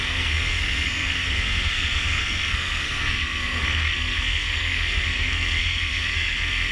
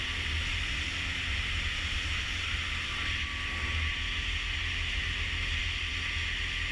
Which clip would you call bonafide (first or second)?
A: second